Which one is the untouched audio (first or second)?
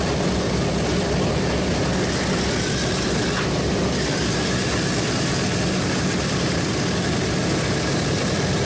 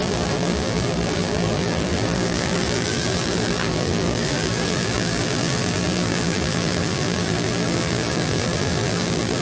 first